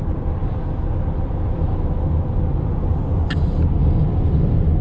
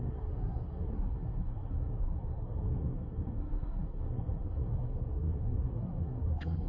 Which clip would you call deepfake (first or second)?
second